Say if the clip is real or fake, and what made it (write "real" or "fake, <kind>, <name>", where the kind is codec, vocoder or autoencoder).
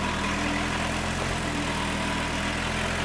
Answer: real